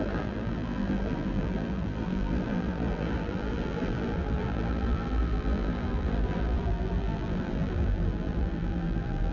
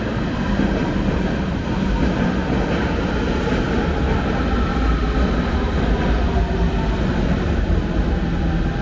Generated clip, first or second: first